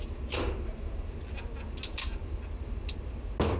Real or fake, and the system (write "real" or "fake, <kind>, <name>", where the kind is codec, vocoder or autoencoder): real